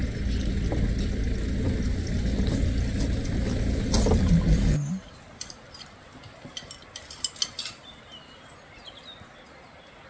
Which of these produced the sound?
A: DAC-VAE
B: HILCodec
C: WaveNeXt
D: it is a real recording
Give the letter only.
D